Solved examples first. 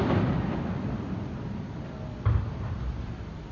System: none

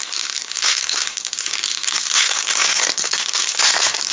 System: codec, SNAC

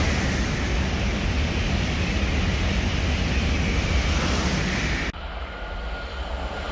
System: none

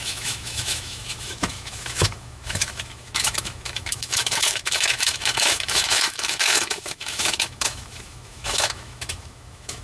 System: autoencoder, DAC-VAE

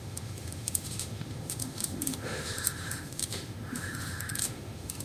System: autoencoder, DAC-VAE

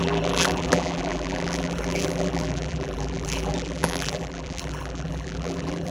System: vocoder, BigVGAN v2